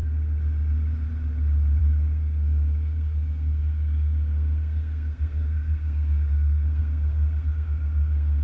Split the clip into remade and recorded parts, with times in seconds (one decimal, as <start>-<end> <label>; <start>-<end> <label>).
0.0-1.8 recorded; 1.8-8.4 remade